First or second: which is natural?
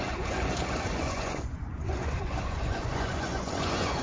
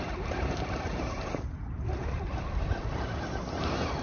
second